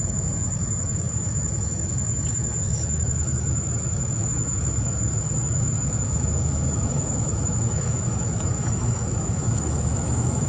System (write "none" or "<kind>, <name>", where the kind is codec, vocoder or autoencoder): autoencoder, DAC-VAE